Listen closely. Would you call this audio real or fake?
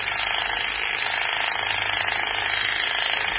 real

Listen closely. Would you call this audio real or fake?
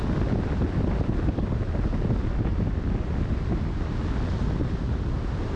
real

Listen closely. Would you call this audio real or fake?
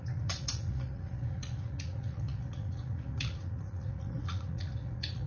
fake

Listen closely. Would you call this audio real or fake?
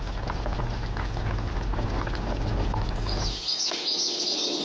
real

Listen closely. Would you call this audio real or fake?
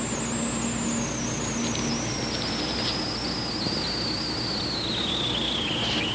real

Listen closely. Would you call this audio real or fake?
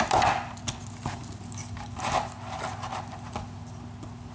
real